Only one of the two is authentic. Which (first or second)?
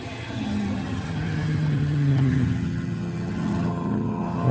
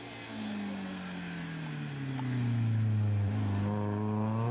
second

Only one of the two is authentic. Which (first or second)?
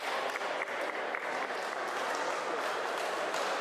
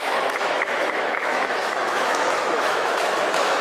first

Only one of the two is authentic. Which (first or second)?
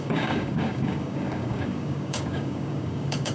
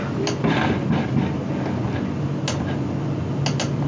second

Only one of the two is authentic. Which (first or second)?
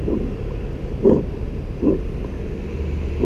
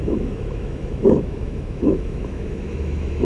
first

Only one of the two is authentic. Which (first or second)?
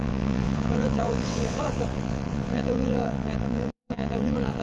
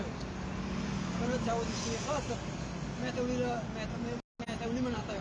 second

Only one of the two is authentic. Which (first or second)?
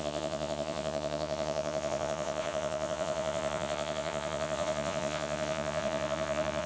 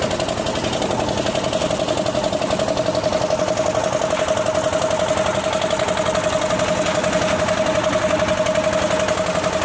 second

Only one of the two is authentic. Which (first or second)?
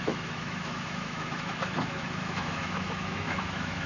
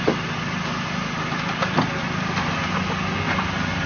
second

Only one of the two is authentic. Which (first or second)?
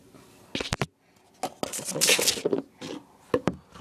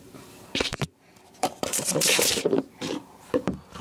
first